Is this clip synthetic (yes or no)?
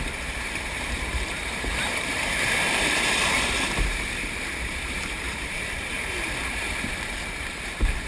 yes